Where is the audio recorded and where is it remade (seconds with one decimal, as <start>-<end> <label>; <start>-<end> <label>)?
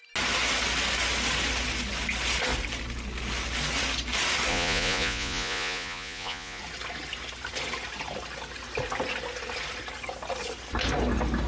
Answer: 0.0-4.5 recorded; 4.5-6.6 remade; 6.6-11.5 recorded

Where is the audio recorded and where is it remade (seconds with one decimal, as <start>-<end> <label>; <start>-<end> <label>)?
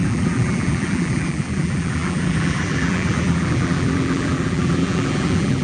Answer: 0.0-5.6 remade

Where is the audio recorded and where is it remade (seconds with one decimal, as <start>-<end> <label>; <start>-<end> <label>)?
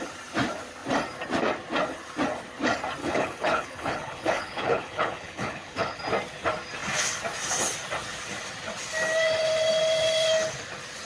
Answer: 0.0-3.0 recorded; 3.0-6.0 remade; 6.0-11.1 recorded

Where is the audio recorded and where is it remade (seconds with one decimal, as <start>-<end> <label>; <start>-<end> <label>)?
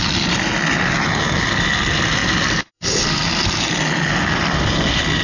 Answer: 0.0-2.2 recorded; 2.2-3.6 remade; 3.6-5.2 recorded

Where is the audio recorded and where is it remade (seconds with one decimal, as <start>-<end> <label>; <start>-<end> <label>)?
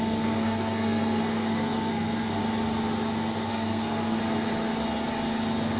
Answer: 0.0-2.4 remade; 2.4-3.5 recorded; 3.5-4.2 remade; 4.2-5.8 recorded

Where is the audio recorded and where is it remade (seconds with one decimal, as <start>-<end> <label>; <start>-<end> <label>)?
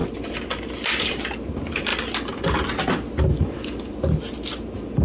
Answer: 0.0-5.0 recorded